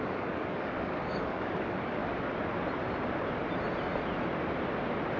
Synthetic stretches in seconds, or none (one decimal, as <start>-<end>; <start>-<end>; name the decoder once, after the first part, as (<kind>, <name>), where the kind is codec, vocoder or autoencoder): 0.0-2.0 (codec, DAC)